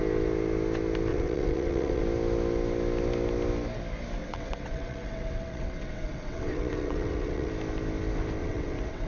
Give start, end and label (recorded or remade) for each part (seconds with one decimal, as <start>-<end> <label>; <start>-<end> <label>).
0.0-1.1 recorded; 1.1-2.0 remade; 2.0-4.2 recorded; 4.2-7.5 remade; 7.5-8.4 recorded; 8.4-9.1 remade